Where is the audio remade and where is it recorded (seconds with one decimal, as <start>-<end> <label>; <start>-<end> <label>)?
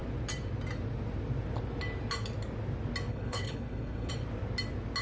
0.0-3.1 recorded; 3.1-4.1 remade; 4.1-5.0 recorded